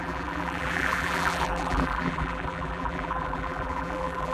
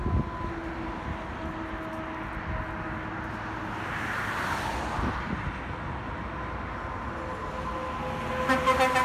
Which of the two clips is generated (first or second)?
first